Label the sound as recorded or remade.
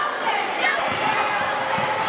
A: recorded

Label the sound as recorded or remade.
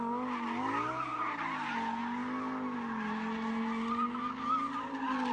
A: recorded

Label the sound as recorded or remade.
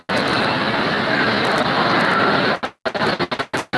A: recorded